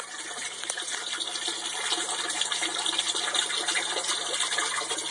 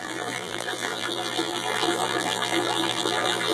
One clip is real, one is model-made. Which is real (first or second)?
first